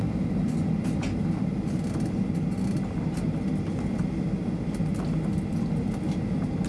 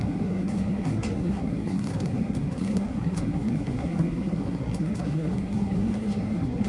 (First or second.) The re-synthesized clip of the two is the second